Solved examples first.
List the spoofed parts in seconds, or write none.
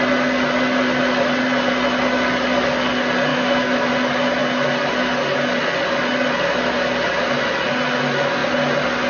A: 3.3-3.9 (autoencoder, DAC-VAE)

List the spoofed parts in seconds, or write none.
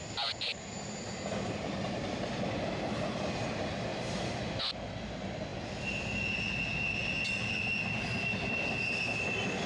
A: 3.9-4.6 (vocoder, BigVGAN v2)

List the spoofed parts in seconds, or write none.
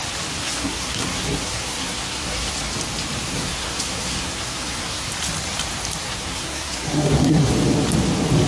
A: 0.4-2.5 (codec, SNAC); 3.2-5.1; 6.0-7.5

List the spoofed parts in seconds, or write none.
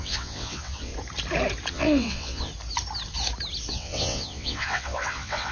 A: 0.0-0.9 (vocoder, WaveNeXt); 1.7-2.5; 3.7-5.5